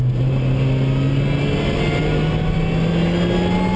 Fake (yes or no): no